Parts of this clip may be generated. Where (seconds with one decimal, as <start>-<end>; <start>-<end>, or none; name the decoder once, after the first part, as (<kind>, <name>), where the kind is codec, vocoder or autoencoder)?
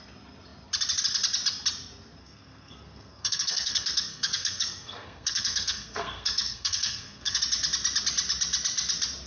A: 2.2-7.4 (codec, SNAC)